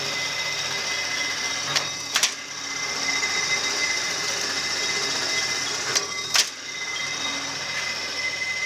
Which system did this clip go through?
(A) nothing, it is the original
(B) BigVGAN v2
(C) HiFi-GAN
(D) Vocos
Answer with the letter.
A